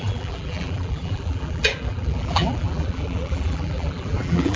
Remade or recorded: remade